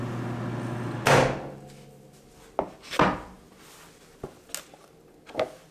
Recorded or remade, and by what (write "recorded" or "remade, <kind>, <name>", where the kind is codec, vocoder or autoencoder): recorded